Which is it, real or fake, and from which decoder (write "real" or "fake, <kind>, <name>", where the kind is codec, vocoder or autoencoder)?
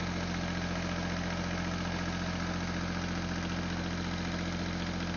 real